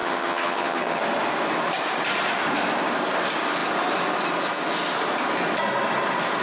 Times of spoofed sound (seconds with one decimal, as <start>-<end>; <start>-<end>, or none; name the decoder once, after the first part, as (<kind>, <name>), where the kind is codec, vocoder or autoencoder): 0.0-1.0 (vocoder, HiFi-GAN)